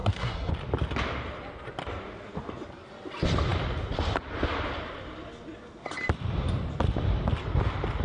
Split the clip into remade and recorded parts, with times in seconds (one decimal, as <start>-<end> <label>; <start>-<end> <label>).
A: 0.0-0.5 remade; 0.5-8.0 recorded